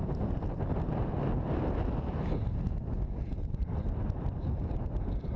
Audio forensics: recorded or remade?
recorded